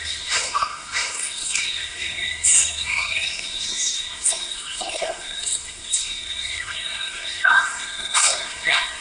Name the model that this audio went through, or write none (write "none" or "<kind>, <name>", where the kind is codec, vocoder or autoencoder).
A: codec, SNAC